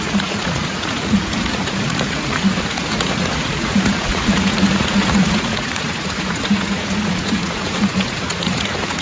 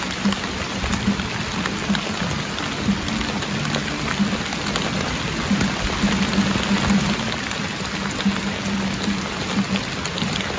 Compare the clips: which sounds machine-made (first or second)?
first